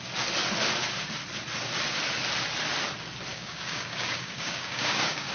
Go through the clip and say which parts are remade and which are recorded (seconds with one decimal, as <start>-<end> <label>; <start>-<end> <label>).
0.0-3.3 recorded; 3.3-5.3 remade